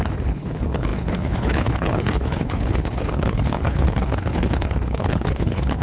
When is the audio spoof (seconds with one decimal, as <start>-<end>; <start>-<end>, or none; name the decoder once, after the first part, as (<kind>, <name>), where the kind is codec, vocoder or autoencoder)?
0.0-5.8 (codec, HILCodec)